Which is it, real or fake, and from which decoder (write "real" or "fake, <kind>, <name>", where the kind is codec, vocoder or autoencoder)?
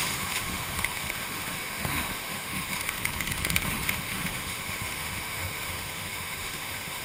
fake, autoencoder, DAC-VAE